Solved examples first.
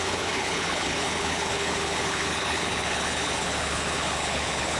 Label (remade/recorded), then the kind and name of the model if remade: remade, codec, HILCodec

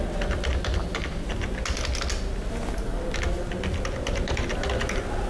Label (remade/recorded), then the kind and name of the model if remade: recorded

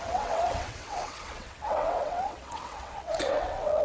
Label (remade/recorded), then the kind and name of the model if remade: remade, vocoder, WaveNeXt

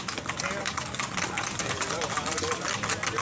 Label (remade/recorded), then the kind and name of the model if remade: recorded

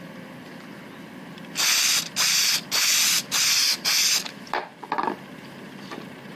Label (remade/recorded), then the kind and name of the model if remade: recorded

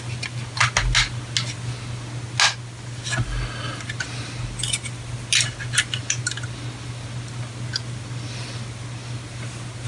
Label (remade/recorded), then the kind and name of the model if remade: recorded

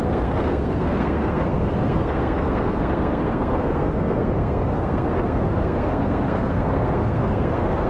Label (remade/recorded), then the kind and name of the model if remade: remade, codec, SNAC